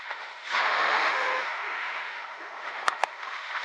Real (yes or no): no